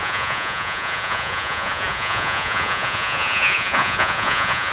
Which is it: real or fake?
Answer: fake